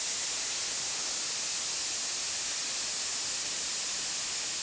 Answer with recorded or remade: recorded